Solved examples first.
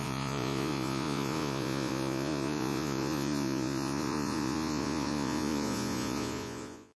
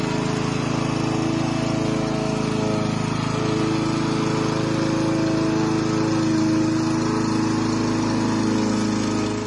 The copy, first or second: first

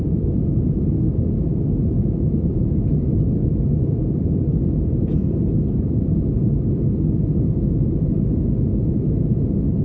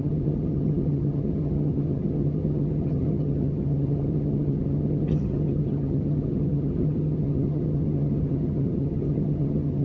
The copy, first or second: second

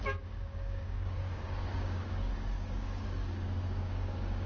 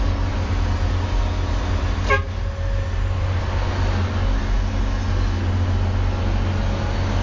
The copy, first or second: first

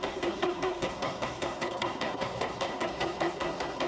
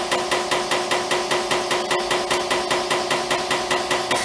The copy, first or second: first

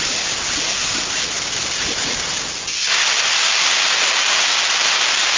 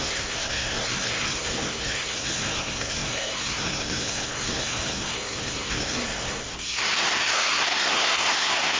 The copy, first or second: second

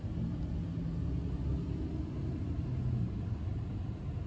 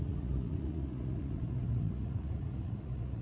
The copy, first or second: second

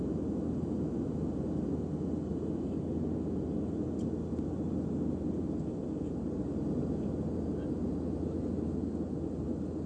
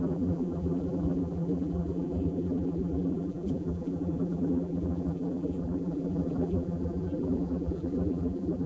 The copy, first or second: second